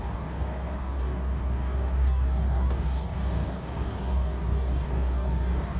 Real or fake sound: fake